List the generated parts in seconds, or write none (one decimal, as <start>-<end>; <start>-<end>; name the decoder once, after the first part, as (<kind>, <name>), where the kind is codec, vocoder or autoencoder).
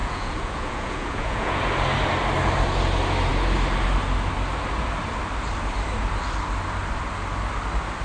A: 0.0-1.6 (vocoder, Vocos)